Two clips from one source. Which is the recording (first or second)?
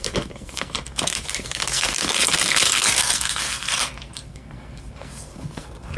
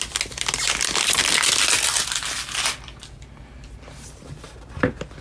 second